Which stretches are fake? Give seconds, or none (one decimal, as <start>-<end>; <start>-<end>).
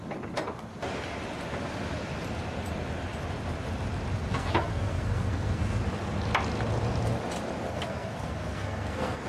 4.3-5.8; 7.7-9.3